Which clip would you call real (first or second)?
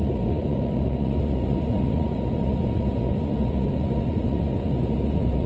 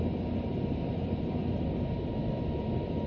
second